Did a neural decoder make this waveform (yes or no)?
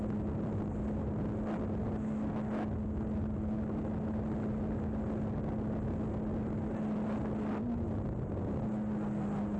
no